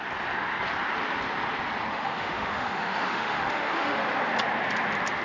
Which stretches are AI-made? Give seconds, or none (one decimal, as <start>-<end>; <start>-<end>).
1.9-4.0